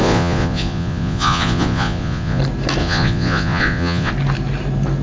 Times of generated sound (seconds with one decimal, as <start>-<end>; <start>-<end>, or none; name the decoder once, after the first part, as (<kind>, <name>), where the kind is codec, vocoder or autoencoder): 0.0-2.4 (vocoder, Vocos); 2.8-4.1